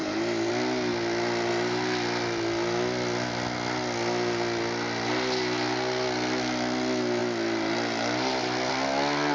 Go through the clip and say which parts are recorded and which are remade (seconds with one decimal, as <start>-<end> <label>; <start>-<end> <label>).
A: 0.0-0.5 remade; 0.5-9.3 recorded